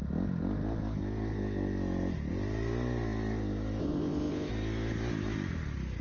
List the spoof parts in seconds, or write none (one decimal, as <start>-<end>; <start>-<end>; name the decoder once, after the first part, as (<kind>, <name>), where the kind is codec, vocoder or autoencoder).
3.8-4.5 (codec, ZipCodec)